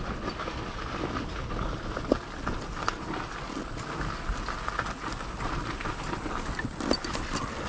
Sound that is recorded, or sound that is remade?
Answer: recorded